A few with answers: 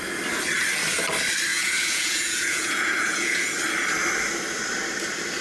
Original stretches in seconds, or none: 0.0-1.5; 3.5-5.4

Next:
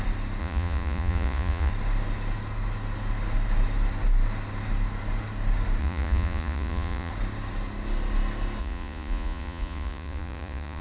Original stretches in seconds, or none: 0.0-0.4; 1.7-5.8; 7.1-8.6

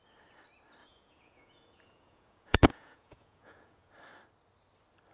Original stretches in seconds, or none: 0.0-0.8; 3.9-5.1